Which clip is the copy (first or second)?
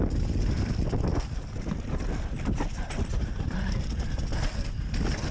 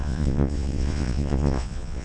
second